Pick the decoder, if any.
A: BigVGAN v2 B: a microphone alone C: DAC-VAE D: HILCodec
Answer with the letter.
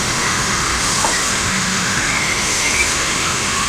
C